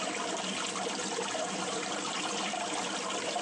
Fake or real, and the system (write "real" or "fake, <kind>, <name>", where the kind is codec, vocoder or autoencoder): real